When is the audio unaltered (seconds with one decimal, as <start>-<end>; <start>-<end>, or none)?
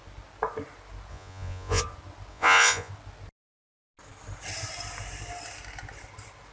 0.0-1.1; 1.8-2.3; 2.9-6.5